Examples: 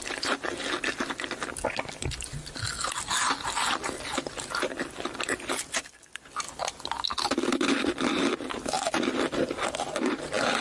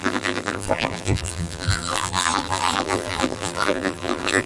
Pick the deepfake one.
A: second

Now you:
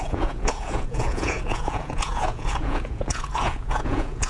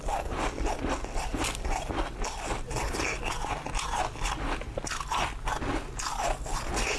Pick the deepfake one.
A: first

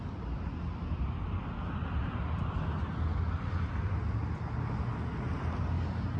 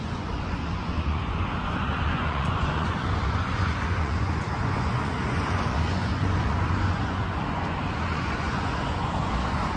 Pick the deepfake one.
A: second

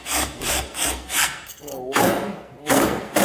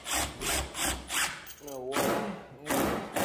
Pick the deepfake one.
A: first